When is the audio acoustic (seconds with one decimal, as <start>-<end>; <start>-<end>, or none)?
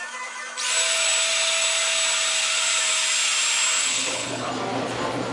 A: 0.0-3.8; 4.5-5.3